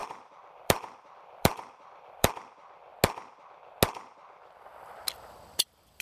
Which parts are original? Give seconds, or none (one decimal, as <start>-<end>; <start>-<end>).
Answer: 2.3-6.0